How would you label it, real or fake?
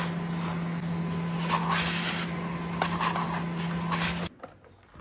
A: real